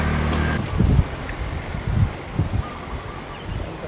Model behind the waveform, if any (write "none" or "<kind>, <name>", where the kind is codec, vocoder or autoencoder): none